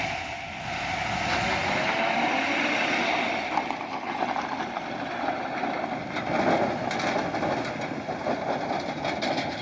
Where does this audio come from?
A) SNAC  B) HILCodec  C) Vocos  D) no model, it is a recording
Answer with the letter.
D